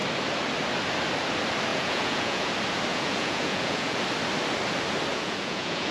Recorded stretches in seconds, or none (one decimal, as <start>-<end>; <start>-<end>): 0.0-1.7; 2.5-2.9; 4.0-5.1